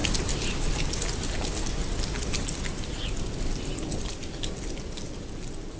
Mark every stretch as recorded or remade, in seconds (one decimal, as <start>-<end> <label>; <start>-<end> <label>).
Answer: 0.0-0.7 remade; 0.7-1.8 recorded; 1.8-5.3 remade; 5.3-5.8 recorded